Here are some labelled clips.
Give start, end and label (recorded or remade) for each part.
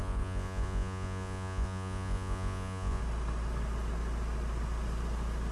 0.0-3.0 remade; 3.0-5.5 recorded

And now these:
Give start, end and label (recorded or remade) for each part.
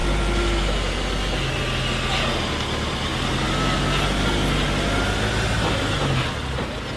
0.0-7.0 recorded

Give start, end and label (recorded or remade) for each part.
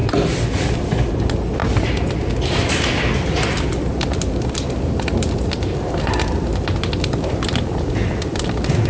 0.0-1.6 remade; 1.6-2.5 recorded; 2.5-8.9 remade